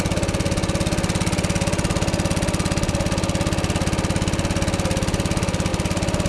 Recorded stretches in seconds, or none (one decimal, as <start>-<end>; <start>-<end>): 0.0-5.7